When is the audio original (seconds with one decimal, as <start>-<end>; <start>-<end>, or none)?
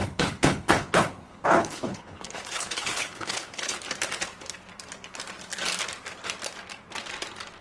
3.8-7.6